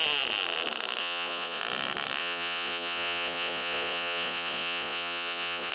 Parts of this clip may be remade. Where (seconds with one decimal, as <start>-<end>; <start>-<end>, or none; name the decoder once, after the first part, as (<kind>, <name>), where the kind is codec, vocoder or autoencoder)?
1.0-1.6 (vocoder, Vocos); 2.2-5.7